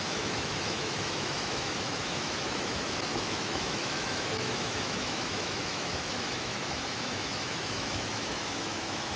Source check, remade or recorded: remade